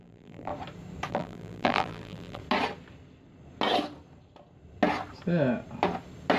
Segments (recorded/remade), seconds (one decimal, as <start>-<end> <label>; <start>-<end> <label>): 0.0-0.5 remade; 0.5-1.1 recorded; 1.1-2.4 remade; 2.4-6.4 recorded